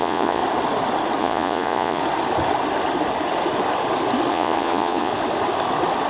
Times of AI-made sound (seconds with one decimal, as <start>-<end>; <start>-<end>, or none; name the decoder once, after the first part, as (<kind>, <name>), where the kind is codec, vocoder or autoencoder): 0.0-0.4 (vocoder, Vocos); 1.2-2.0; 4.3-5.1

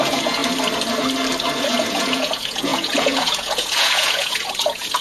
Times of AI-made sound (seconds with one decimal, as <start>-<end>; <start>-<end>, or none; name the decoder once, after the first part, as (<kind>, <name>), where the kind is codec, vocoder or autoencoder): 0.0-0.4 (vocoder, Vocos); 1.6-5.0

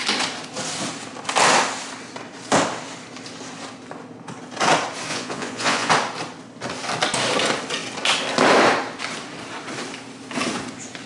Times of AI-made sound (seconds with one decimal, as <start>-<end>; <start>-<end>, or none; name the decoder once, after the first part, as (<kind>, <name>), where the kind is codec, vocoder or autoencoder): 5.1-5.9 (vocoder, Vocos)

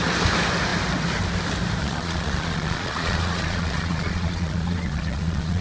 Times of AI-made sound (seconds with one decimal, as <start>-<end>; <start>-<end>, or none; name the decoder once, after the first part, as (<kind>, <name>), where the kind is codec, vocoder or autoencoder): 1.8-5.6 (vocoder, Vocos)

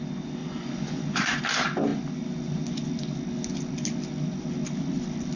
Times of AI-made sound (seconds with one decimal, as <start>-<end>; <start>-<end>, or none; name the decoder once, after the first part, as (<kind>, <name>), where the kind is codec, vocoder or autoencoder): 0.4-1.4 (vocoder, Vocos)

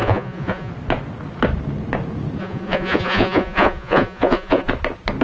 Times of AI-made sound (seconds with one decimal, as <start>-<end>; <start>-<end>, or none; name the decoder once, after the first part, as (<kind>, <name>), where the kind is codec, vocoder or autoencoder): 0.0-0.7 (vocoder, Vocos); 2.4-4.7

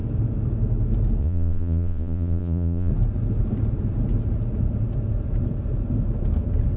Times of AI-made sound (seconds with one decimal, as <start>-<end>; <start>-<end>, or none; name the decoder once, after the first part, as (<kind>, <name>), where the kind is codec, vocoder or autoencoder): 1.2-2.9 (vocoder, Vocos)

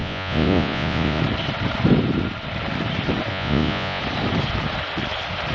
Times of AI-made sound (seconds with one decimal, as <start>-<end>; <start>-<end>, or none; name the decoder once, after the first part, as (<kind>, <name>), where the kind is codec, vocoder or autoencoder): 0.0-1.2 (vocoder, Vocos); 3.3-4.0